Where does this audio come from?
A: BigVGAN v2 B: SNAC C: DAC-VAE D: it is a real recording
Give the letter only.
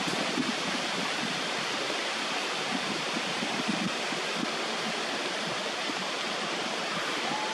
D